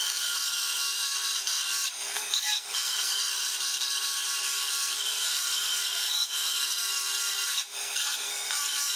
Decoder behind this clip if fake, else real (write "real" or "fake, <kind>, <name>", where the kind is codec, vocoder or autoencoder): fake, codec, SNAC